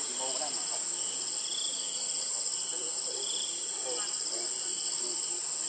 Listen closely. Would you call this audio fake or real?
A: real